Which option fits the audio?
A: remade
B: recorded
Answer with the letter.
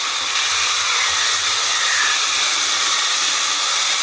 B